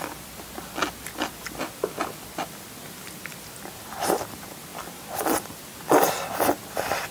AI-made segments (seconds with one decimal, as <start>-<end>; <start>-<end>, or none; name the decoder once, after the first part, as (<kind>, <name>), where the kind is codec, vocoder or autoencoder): none